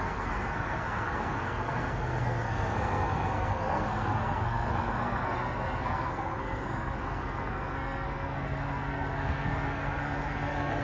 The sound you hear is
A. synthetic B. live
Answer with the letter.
A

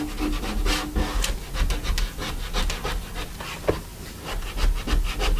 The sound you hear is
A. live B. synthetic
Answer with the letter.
A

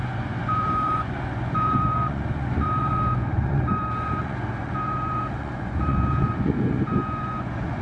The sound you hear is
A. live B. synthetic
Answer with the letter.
B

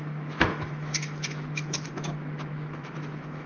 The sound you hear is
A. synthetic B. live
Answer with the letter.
A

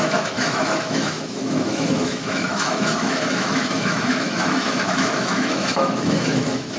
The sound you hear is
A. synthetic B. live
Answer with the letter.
A